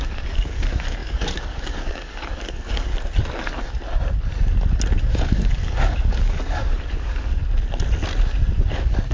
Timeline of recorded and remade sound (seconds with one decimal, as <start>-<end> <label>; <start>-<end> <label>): 0.0-2.9 remade; 2.9-5.1 recorded; 5.1-7.4 remade; 7.4-8.7 recorded; 8.7-9.1 remade

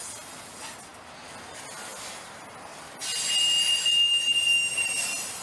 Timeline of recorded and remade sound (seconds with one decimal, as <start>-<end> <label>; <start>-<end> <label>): 0.0-5.4 recorded

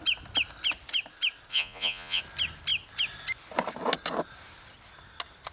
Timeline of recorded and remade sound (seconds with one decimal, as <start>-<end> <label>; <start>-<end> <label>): 0.0-1.5 recorded; 1.5-2.2 remade; 2.2-5.5 recorded